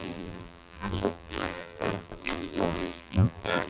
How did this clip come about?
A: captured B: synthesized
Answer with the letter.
B